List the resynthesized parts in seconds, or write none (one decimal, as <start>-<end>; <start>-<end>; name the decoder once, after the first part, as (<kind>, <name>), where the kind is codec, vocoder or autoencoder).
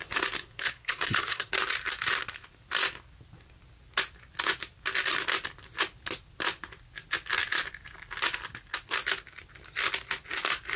0.4-1.5 (codec, SNAC)